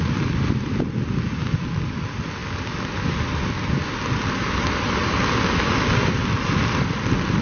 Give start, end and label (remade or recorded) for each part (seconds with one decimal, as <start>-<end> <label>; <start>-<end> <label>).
0.0-7.4 recorded